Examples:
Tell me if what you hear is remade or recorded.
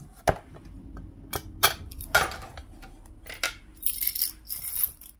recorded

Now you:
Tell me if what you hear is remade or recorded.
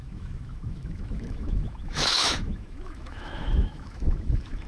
remade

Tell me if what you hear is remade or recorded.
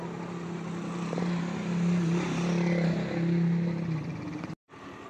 recorded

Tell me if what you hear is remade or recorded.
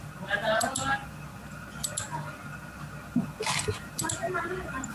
recorded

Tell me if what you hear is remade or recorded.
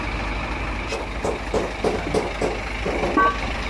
recorded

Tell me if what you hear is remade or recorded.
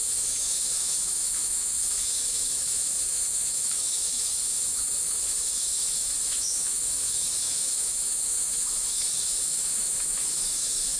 remade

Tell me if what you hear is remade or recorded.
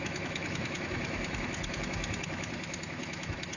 remade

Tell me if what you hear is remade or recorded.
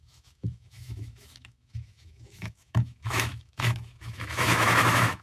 remade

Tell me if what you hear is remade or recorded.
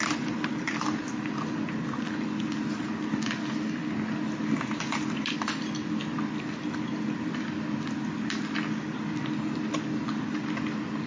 recorded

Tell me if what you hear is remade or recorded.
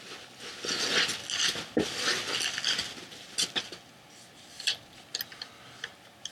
recorded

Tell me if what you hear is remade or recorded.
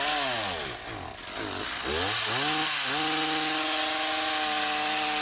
recorded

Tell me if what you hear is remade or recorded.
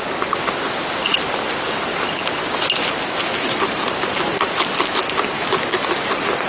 recorded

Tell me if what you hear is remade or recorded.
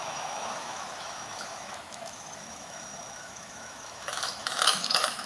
remade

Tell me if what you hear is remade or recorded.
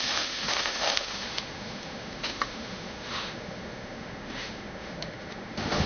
remade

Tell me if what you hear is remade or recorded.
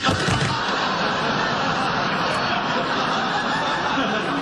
recorded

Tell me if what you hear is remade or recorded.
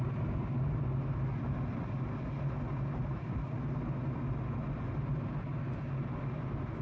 recorded